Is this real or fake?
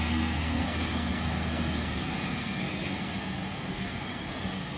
fake